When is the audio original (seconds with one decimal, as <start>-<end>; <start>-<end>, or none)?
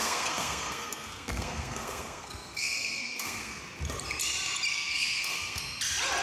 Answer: 3.6-4.7; 5.6-6.2